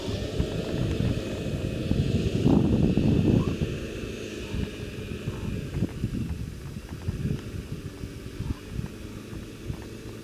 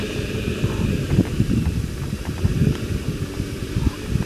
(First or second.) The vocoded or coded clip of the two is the second